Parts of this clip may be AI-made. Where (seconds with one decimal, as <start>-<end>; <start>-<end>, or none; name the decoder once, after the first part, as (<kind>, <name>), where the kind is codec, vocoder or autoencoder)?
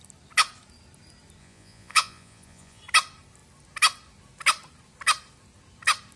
1.4-2.8 (vocoder, Vocos)